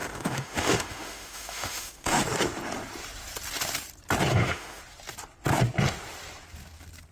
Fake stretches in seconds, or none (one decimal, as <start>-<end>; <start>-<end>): 0.0-2.2; 4.3-4.8